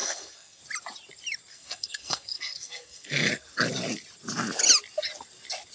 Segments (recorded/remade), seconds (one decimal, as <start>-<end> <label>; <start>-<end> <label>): 0.0-0.6 remade; 0.6-1.5 recorded; 1.5-3.3 remade; 3.3-5.7 recorded

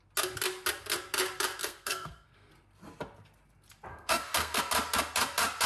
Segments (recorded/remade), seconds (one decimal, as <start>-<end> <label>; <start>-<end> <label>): 0.0-1.6 recorded; 1.6-2.5 remade; 2.5-3.9 recorded; 3.9-4.6 remade; 4.6-5.7 recorded

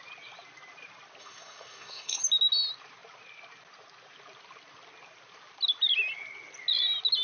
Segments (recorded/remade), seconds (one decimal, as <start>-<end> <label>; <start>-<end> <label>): 0.0-1.2 recorded; 1.2-2.2 remade; 2.2-7.2 recorded

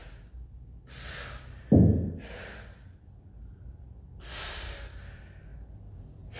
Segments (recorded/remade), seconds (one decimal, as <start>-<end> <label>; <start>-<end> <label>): 0.0-6.4 recorded

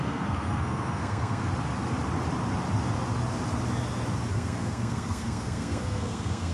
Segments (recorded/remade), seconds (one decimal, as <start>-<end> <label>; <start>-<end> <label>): 0.0-1.5 remade; 1.5-4.3 recorded; 4.3-6.5 remade

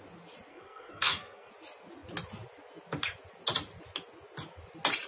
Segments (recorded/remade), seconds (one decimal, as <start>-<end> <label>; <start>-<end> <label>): 0.0-0.5 recorded; 0.5-1.5 remade; 1.5-5.1 recorded

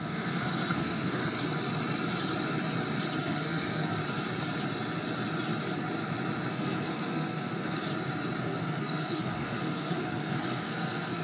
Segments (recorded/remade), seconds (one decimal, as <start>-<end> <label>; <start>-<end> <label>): 0.0-1.2 remade; 1.2-3.2 recorded; 3.2-4.0 remade; 4.0-6.5 recorded; 6.5-7.8 remade; 7.8-8.4 recorded; 8.4-11.2 remade

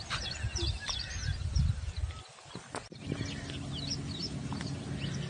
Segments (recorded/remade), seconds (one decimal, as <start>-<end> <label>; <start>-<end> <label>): 0.0-5.3 recorded